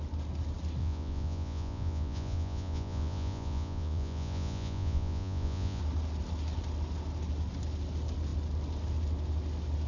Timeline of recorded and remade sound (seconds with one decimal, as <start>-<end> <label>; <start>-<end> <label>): 0.0-0.8 recorded; 0.8-5.8 remade; 5.8-9.9 recorded